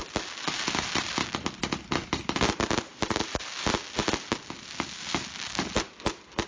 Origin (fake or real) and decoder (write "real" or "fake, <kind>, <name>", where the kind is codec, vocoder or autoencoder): real